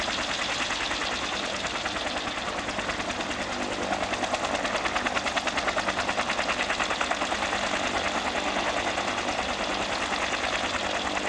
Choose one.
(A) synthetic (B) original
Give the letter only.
B